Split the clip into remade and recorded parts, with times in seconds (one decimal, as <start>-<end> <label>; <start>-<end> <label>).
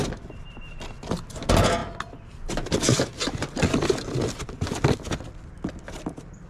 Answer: 0.0-6.5 recorded